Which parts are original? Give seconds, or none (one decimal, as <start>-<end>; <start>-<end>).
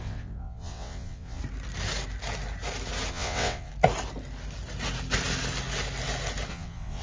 1.4-3.1; 3.7-6.5